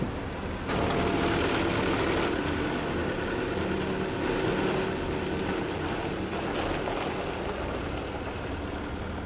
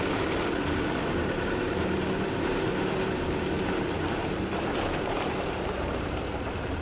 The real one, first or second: first